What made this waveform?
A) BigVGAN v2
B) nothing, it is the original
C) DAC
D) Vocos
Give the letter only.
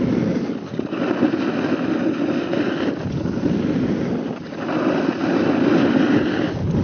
B